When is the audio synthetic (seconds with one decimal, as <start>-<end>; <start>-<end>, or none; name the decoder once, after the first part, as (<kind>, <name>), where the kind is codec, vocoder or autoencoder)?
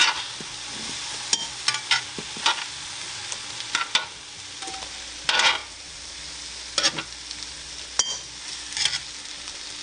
5.6-6.2 (vocoder, BigVGAN v2)